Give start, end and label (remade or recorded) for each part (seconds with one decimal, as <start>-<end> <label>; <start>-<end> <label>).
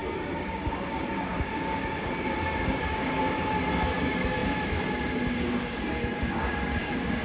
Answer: 0.0-7.2 remade